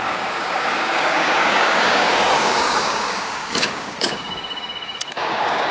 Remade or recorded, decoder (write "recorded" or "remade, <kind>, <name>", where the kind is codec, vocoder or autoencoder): remade, codec, DAC